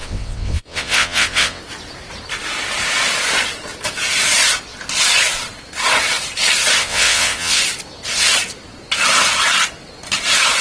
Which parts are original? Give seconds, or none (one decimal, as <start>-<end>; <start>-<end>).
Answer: 1.6-6.8; 7.6-10.6